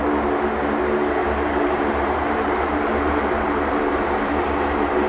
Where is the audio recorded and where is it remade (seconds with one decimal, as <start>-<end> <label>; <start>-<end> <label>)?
0.0-1.2 recorded; 1.2-4.3 remade; 4.3-5.1 recorded